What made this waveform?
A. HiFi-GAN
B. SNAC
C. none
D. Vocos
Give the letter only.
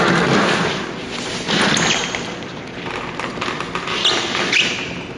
C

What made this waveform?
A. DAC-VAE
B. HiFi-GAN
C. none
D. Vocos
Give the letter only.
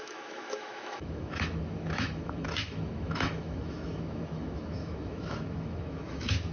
A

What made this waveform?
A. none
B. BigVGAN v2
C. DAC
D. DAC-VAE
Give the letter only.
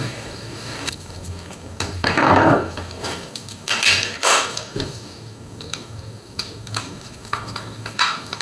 C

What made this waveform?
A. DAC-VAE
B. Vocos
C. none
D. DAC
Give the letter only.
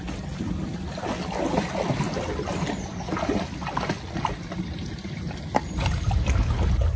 C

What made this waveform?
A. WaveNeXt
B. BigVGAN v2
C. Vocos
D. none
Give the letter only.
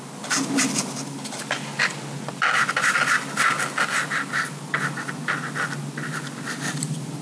D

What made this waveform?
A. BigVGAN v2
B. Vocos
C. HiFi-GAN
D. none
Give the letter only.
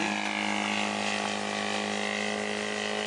D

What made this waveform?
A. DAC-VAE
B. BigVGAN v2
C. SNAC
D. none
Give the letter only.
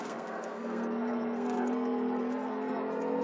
C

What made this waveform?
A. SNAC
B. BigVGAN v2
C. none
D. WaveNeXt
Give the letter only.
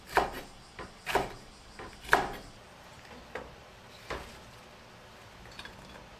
C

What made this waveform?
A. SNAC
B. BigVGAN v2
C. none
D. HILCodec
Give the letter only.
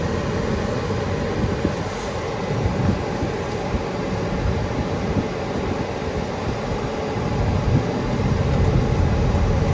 C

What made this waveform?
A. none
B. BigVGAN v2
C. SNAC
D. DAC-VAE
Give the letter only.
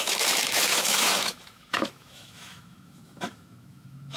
D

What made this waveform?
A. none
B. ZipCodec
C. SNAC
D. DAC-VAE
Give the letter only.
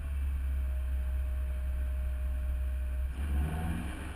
A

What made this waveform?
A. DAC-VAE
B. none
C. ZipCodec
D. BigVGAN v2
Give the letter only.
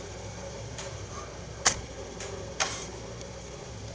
D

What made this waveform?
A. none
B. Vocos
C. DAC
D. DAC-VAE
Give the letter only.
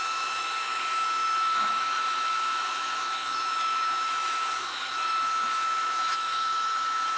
D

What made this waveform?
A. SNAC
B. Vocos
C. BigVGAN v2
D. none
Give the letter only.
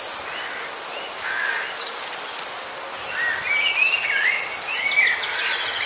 D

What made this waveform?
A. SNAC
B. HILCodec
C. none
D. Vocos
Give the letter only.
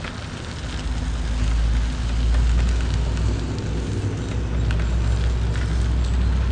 C